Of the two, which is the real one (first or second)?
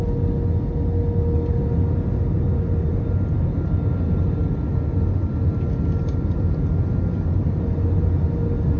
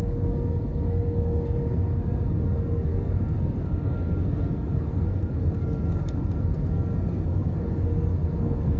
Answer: first